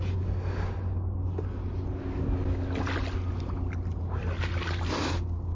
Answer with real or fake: real